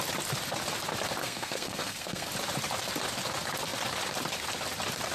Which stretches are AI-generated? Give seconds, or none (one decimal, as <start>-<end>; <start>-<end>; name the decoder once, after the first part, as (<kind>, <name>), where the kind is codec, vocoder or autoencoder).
1.2-2.3 (codec, SNAC)